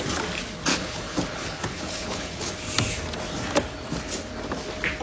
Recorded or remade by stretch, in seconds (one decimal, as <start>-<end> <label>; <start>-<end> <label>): 0.0-0.7 recorded; 0.7-2.5 remade; 2.5-5.0 recorded